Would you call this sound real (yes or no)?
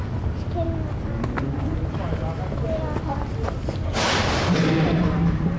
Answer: yes